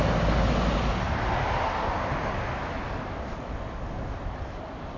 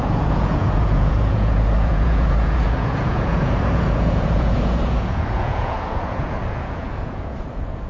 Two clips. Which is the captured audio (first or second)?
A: first